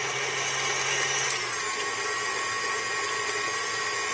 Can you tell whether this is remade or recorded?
recorded